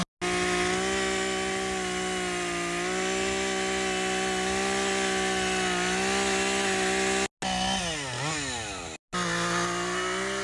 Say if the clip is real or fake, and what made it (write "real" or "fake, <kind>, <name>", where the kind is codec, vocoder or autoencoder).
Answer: real